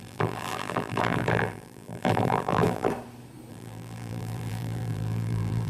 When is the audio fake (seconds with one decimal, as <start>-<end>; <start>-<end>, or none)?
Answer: 0.0-2.9; 3.5-5.7